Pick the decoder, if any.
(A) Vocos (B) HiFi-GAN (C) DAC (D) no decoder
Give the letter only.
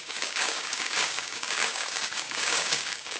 C